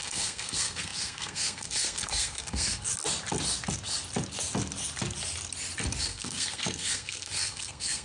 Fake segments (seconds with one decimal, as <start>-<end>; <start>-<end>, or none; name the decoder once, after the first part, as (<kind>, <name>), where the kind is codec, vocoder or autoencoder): 0.0-2.9 (codec, SNAC); 6.0-8.0